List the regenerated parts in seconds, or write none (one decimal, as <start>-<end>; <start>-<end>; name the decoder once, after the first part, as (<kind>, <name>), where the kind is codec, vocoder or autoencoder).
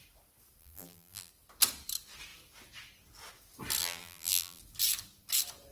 0.6-1.3 (vocoder, BigVGAN v2); 3.8-4.6